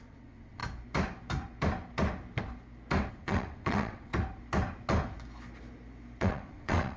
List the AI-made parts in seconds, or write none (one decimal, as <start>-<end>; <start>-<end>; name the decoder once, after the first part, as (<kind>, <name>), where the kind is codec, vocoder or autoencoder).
0.0-0.6 (vocoder, WaveNeXt); 3.1-4.1; 6.2-7.0